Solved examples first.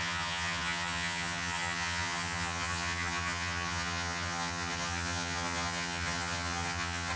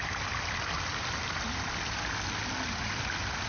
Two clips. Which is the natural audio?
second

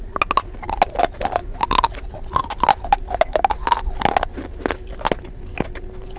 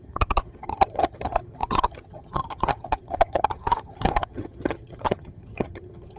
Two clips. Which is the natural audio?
first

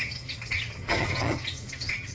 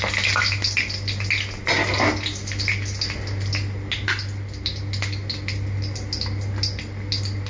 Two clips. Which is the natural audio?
second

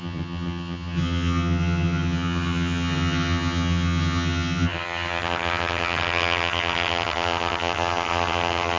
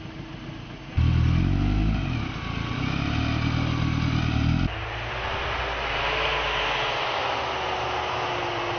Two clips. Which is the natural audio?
second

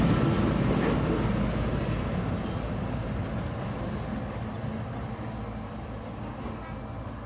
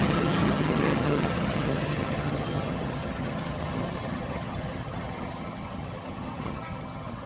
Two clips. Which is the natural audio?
first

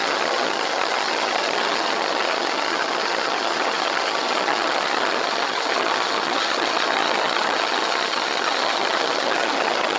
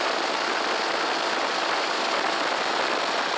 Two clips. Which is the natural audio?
second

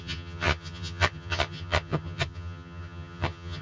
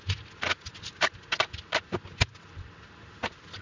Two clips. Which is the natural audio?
second